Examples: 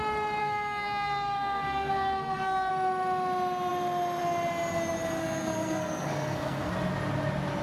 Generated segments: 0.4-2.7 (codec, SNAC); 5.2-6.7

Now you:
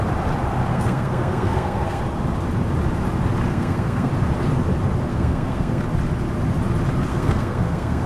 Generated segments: 0.7-2.0 (codec, SNAC); 3.5-4.1; 5.1-5.8; 7.1-8.1